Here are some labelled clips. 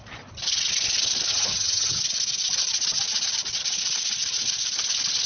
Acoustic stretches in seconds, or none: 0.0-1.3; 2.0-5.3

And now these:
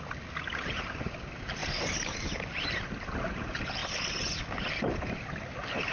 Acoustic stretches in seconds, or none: 0.0-1.6; 2.7-5.9

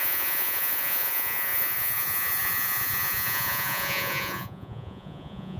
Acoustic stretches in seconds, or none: none

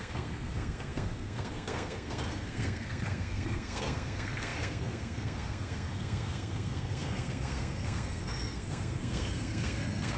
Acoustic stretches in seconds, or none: none

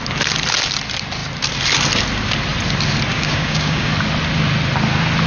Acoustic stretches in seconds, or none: 0.0-3.1; 3.9-5.3

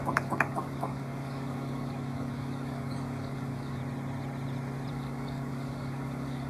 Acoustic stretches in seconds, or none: 3.8-4.9

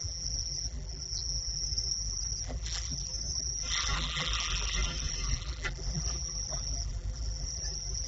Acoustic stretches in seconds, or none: none